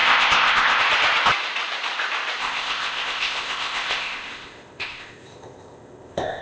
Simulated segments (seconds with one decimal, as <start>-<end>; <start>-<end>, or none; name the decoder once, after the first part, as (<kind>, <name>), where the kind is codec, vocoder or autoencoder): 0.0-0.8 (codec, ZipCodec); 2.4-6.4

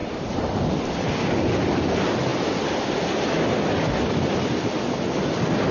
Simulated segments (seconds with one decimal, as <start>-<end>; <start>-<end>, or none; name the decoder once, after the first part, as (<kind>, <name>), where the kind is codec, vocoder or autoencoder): 0.0-0.6 (vocoder, BigVGAN v2)

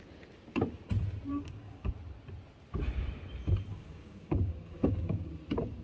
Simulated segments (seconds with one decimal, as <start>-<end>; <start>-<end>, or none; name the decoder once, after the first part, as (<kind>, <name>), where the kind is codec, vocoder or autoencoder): 1.3-1.9 (codec, DAC); 3.7-5.3

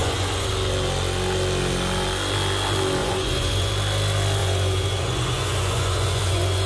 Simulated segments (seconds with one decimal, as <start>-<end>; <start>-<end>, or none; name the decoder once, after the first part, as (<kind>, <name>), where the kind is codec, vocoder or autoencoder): 0.0-0.5 (vocoder, Vocos); 3.0-3.7; 4.4-6.7

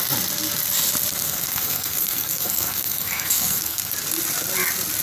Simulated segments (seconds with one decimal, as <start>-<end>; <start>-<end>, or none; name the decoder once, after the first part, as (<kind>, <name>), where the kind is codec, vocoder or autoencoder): 1.1-3.9 (codec, SNAC)

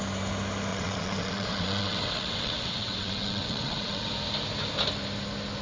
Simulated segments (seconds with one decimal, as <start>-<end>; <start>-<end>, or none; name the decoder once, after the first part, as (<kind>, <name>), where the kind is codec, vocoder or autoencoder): 0.7-4.1 (vocoder, WaveNeXt)